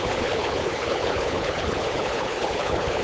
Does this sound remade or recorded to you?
remade